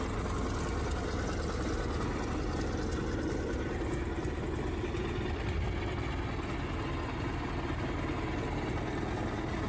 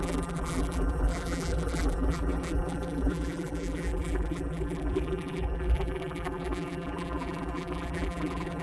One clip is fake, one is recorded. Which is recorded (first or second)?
first